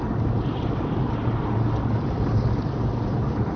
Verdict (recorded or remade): recorded